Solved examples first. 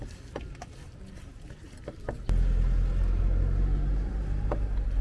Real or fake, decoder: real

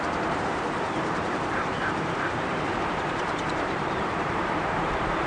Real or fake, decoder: fake, vocoder, BigVGAN v2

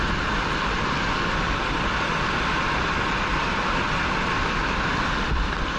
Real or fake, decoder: real